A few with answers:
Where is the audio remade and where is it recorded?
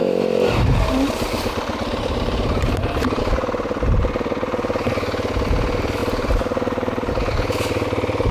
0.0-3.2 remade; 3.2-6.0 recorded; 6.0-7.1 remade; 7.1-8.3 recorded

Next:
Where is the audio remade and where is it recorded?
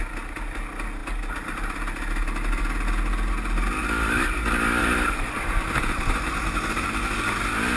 0.0-4.8 recorded; 4.8-6.9 remade; 6.9-7.8 recorded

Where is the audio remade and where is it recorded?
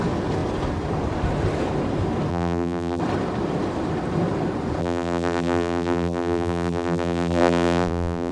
0.0-2.3 recorded; 2.3-3.0 remade; 3.0-4.8 recorded; 4.8-8.3 remade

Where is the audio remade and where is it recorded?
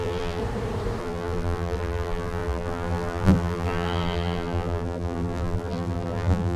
0.0-0.4 remade; 0.4-1.0 recorded; 1.0-6.6 remade